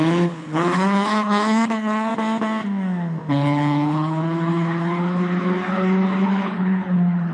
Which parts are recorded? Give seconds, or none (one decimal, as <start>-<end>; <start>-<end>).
2.1-3.3